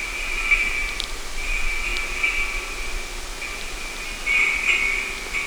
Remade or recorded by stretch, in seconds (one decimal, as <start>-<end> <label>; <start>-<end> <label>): 0.0-5.5 recorded